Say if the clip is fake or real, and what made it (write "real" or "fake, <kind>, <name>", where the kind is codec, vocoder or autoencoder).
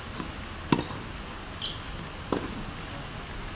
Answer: real